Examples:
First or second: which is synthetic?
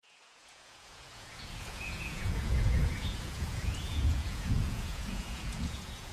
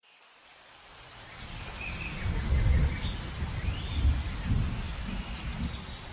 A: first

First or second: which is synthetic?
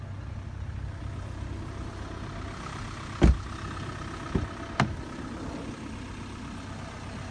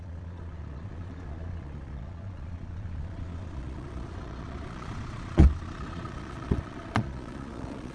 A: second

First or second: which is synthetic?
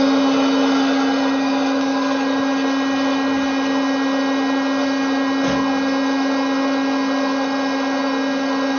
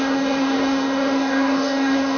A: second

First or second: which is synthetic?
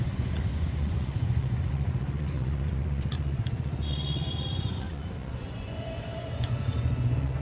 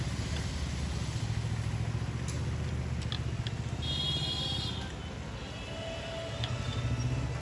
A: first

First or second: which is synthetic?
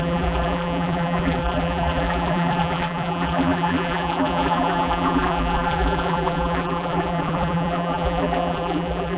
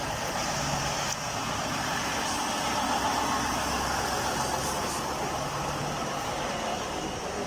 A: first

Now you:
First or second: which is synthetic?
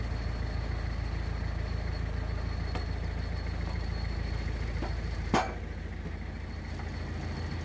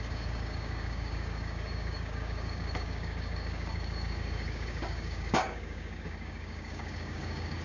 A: second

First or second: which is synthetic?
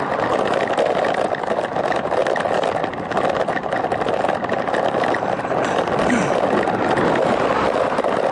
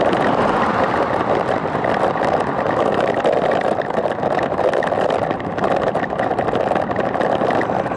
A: second